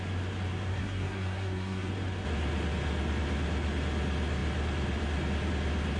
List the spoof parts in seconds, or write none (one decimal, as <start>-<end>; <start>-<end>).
0.7-1.9